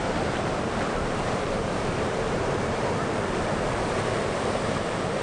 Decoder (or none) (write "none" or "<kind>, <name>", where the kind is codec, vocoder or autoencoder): vocoder, BigVGAN v2